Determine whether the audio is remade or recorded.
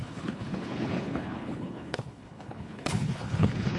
remade